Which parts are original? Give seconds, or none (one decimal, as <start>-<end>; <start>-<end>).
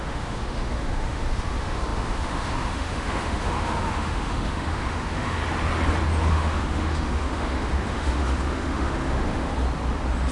5.4-6.3; 9.5-10.3